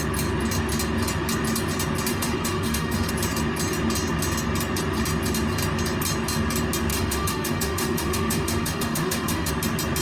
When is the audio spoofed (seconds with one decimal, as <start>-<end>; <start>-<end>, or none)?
2.1-3.1; 6.9-9.5